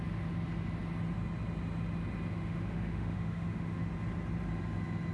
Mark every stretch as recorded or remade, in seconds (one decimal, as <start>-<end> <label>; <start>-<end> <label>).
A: 0.0-2.3 recorded; 2.3-3.9 remade; 3.9-5.1 recorded